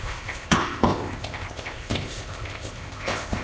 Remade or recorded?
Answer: remade